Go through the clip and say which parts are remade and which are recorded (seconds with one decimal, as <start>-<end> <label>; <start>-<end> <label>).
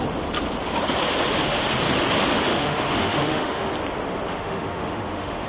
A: 0.0-2.5 recorded; 2.5-3.7 remade; 3.7-4.3 recorded; 4.3-5.5 remade